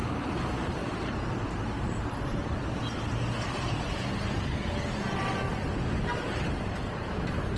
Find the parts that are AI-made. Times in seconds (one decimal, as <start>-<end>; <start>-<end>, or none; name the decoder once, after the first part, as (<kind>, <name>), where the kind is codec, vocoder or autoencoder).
0.8-2.6 (vocoder, BigVGAN v2)